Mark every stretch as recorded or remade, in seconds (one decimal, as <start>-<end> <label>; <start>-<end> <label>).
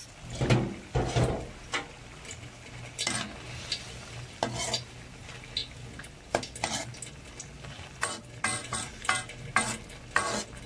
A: 0.0-10.7 recorded